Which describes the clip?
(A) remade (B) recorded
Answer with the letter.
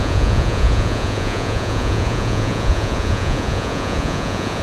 A